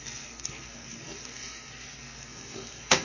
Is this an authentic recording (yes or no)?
no